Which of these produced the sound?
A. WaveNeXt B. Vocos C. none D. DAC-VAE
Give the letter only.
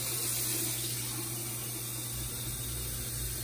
C